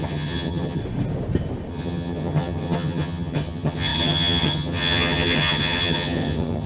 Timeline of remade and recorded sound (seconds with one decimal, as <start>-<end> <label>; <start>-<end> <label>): 0.0-0.8 remade; 0.8-1.7 recorded; 1.7-6.7 remade